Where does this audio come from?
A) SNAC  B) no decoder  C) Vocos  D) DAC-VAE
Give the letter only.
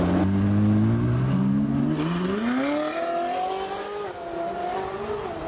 B